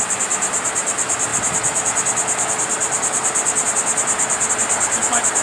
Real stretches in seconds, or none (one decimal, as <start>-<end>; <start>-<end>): 0.0-5.4